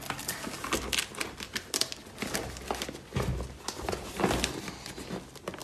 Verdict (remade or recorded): recorded